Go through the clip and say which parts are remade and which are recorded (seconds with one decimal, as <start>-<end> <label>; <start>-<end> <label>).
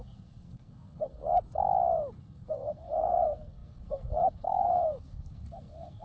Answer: 0.0-1.2 remade; 1.2-2.2 recorded; 2.2-6.0 remade